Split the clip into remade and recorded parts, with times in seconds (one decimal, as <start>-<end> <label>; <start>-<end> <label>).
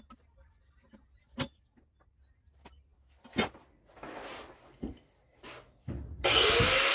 0.0-6.9 recorded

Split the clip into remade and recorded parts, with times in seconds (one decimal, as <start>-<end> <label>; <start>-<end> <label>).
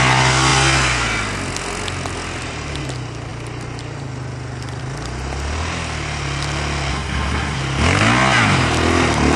0.0-6.9 recorded; 6.9-7.6 remade; 7.6-9.4 recorded